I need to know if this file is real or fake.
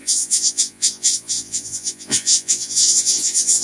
fake